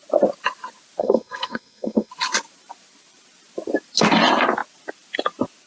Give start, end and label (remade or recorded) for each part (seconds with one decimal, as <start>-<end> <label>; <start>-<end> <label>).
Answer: 0.0-1.0 recorded; 1.0-2.1 remade; 2.1-5.7 recorded